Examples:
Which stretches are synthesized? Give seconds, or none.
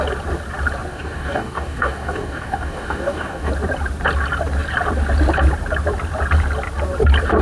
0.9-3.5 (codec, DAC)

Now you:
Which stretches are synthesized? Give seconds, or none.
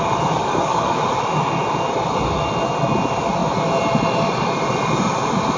0.4-1.0 (codec, DAC)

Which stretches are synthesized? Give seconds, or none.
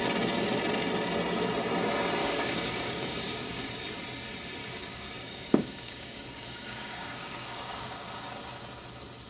2.2-3.7 (codec, DAC); 4.6-8.4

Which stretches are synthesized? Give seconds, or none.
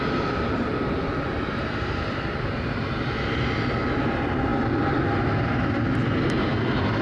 none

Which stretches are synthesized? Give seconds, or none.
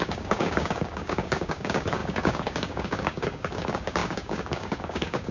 0.0-5.3 (codec, DAC)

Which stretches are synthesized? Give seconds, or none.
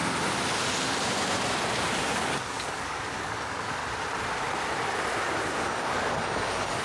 2.0-3.8 (codec, DAC); 5.6-6.8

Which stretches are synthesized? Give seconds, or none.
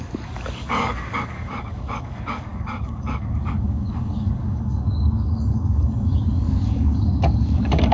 0.0-7.9 (codec, DAC)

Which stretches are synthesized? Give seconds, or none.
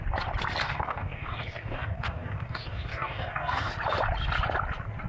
0.6-3.7 (codec, DAC)